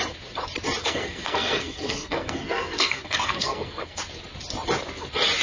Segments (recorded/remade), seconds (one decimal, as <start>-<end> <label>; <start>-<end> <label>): 0.0-0.8 recorded; 0.8-4.0 remade; 4.0-5.4 recorded